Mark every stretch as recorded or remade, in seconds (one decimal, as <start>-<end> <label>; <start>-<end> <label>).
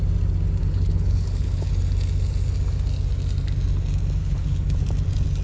0.0-0.6 recorded; 0.6-1.7 remade; 1.7-4.2 recorded; 4.2-4.8 remade; 4.8-5.4 recorded